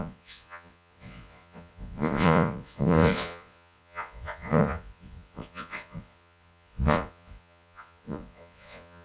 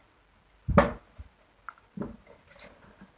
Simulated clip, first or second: first